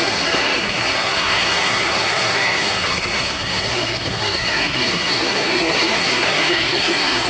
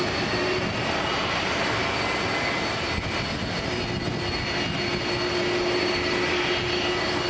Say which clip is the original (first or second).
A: second